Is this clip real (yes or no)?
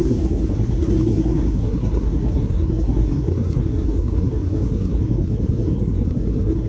no